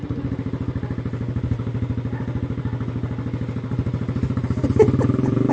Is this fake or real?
real